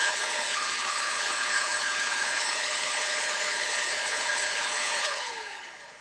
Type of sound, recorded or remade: remade